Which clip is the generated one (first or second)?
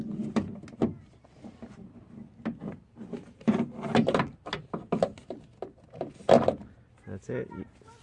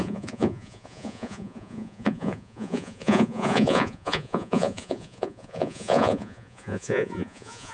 second